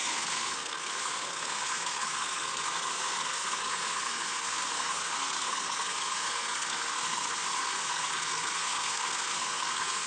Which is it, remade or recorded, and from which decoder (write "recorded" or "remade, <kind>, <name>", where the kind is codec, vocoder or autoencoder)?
remade, codec, SNAC